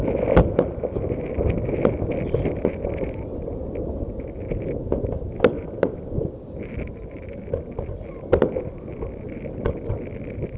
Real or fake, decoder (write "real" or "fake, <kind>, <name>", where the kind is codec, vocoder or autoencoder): real